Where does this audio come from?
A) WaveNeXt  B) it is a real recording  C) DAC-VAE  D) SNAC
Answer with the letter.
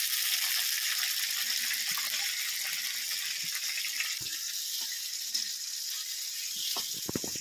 B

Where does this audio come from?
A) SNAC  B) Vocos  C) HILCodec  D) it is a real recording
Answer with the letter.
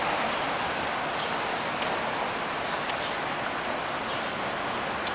D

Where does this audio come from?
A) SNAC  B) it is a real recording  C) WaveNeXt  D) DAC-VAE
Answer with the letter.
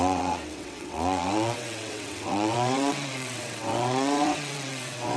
C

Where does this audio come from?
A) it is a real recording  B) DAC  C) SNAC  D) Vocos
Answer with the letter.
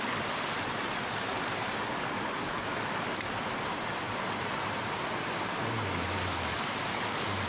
A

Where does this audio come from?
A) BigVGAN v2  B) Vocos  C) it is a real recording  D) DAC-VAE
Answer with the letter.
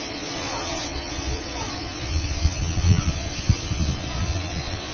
B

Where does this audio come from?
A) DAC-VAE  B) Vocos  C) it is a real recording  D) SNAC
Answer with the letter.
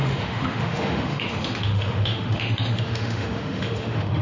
A